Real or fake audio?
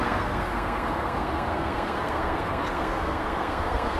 fake